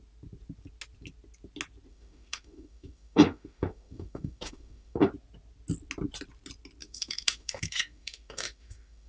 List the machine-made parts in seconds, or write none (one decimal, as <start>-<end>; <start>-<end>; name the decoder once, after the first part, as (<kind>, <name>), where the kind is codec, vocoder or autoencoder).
1.9-5.1 (autoencoder, DAC-VAE); 6.8-9.1